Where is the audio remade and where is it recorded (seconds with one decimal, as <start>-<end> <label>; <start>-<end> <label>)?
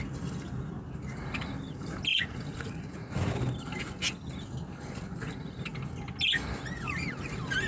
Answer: 0.0-2.1 recorded; 2.1-3.3 remade; 3.3-7.7 recorded